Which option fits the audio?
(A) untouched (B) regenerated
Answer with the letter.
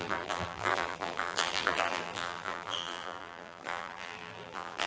B